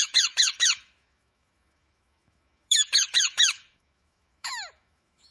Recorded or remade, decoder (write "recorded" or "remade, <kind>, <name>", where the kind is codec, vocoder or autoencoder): remade, autoencoder, DAC-VAE